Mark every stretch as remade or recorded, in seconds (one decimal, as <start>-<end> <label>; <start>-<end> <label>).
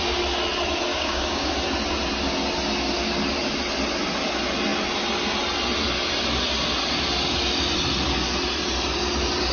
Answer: 0.0-0.9 recorded; 0.9-1.5 remade; 1.5-9.5 recorded